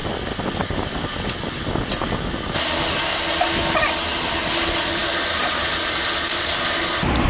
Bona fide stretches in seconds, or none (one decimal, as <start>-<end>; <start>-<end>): 0.0-7.3